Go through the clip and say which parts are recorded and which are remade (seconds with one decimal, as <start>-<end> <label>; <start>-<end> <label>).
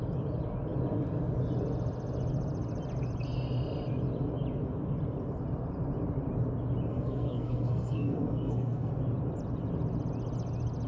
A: 0.0-6.9 recorded; 6.9-8.9 remade; 8.9-10.9 recorded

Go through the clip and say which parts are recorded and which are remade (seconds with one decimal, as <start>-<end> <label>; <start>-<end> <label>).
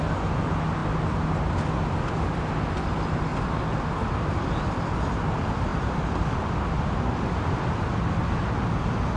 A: 0.0-9.2 recorded